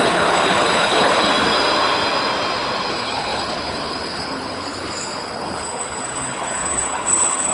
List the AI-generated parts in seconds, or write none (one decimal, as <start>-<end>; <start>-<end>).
0.0-1.3; 2.9-7.5